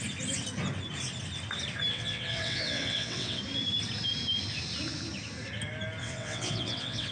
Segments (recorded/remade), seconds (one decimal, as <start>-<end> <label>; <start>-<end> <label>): 0.0-1.9 recorded; 1.9-3.4 remade; 3.4-6.0 recorded; 6.0-7.1 remade